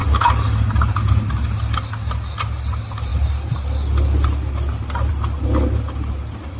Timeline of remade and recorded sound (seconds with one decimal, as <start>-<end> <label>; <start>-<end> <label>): 0.0-6.6 recorded